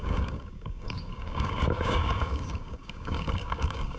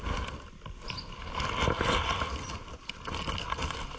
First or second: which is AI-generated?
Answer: first